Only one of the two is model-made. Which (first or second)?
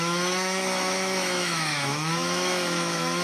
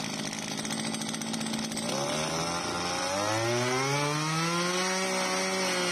first